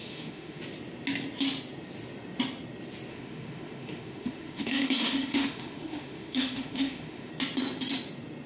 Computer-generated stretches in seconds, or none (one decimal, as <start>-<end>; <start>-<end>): 0.0-0.6; 3.1-7.3